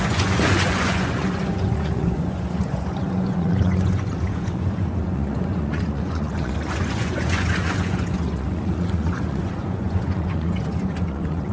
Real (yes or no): no